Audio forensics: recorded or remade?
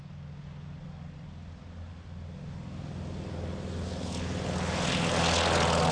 recorded